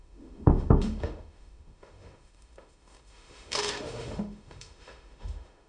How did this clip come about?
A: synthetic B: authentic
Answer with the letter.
A